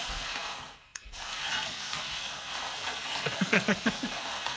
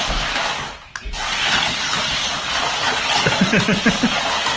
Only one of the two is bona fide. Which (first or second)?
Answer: second